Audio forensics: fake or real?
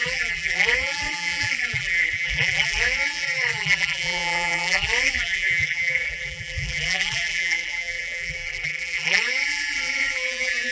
fake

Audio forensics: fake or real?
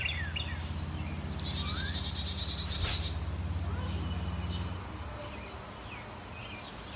real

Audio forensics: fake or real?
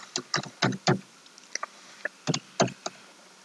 real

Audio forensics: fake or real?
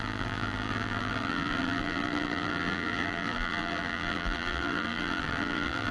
fake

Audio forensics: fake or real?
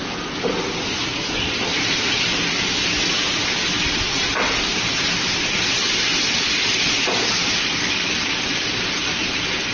real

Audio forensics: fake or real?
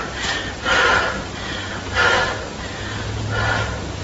real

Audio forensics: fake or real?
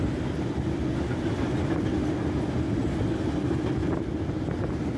real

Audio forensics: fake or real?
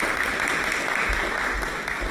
real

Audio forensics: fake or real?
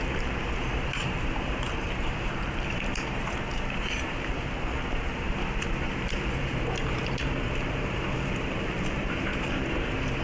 fake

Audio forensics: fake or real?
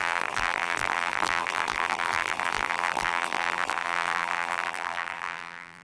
fake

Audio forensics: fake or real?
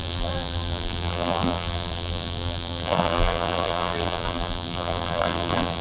fake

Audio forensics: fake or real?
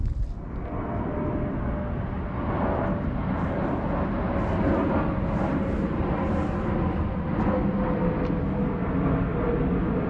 real